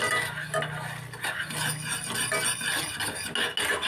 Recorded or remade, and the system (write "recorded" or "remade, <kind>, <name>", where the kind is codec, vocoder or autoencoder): recorded